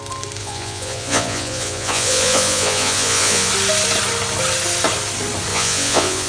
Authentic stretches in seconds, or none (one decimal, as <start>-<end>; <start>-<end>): 0.0-0.4; 3.5-5.5